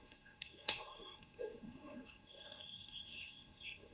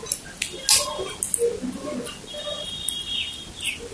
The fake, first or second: first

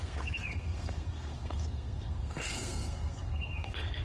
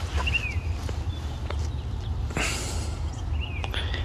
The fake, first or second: first